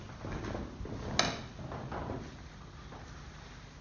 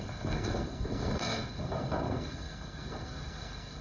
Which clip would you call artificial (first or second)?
second